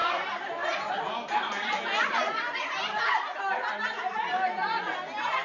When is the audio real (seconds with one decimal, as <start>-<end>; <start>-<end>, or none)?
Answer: 0.0-5.4

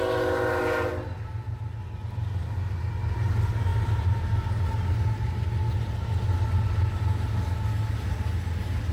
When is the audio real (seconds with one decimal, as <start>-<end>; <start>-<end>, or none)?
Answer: 0.0-8.9

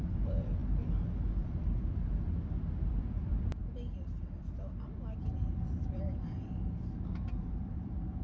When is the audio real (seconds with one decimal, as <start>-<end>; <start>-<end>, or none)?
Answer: none

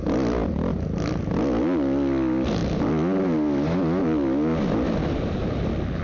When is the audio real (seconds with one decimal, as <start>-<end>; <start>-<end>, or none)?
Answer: 0.0-6.0